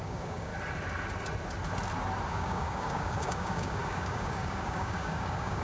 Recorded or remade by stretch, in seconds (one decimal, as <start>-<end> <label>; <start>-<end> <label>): 0.0-0.5 remade; 0.5-2.3 recorded; 2.3-5.6 remade